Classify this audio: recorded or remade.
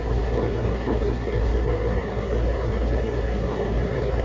remade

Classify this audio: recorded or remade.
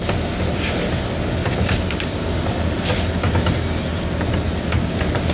recorded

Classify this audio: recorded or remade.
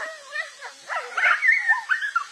recorded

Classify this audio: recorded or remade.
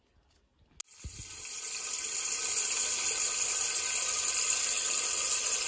recorded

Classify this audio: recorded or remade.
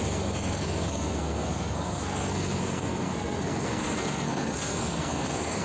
remade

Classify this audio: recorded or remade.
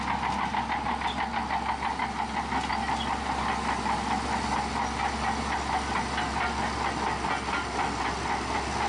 recorded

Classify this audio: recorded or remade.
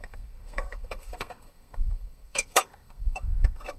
remade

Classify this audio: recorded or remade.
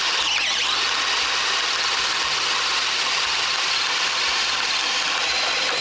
recorded